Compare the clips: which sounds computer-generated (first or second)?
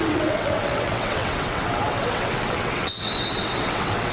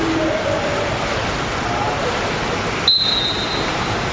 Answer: first